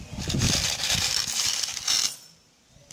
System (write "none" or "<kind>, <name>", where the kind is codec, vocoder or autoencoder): none